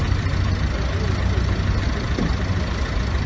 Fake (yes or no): no